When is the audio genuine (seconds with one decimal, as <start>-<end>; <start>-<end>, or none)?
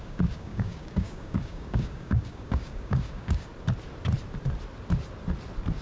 3.5-5.8